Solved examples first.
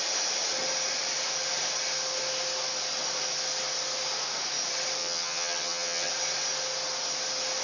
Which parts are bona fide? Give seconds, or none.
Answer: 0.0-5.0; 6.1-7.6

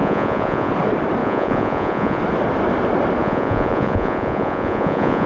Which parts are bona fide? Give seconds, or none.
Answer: 0.7-1.2; 2.2-3.2